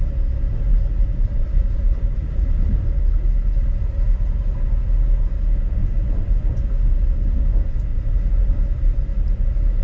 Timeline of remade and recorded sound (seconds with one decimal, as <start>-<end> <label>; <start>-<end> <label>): 0.0-0.7 recorded; 0.7-3.0 remade; 3.0-5.8 recorded; 5.8-6.3 remade; 6.3-7.9 recorded; 7.9-8.5 remade; 8.5-9.8 recorded